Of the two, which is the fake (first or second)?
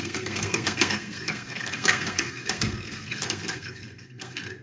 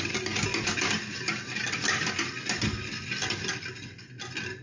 first